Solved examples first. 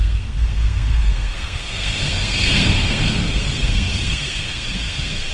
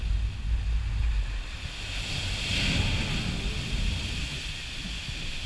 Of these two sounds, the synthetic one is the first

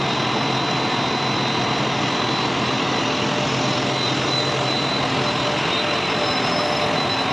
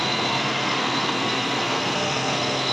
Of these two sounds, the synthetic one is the second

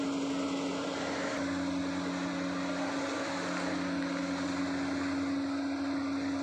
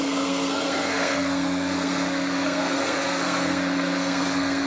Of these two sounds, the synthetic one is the second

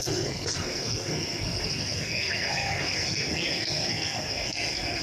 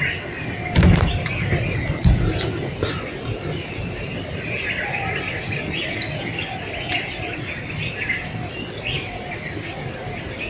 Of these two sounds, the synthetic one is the first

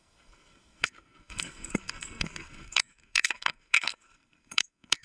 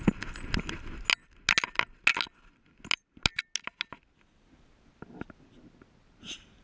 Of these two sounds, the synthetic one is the first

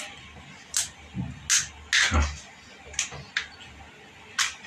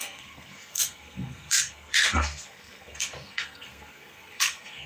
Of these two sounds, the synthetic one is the second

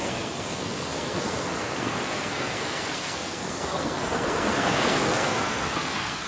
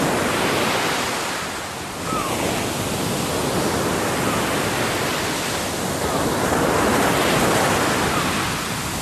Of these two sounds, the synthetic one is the first